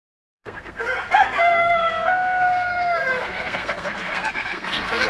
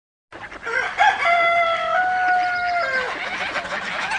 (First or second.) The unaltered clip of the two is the second